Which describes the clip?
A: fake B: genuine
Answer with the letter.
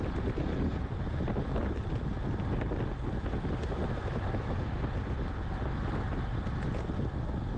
B